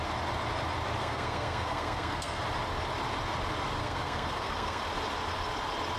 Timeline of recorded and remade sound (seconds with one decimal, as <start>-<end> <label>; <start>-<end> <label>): 0.0-1.0 recorded; 1.0-2.4 remade; 2.4-3.8 recorded; 3.8-4.8 remade; 4.8-6.0 recorded